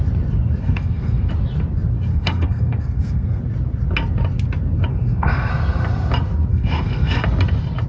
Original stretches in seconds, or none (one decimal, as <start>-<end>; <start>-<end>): 0.0-0.6; 1.3-2.1; 3.4-4.9; 5.5-6.5; 7.2-7.9